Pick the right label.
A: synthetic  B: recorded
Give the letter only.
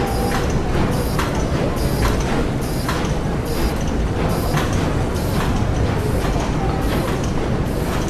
B